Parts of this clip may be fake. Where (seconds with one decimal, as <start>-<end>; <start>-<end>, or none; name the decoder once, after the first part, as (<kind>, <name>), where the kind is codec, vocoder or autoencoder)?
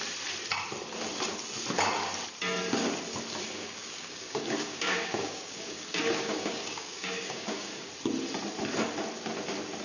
3.6-7.9 (codec, DAC)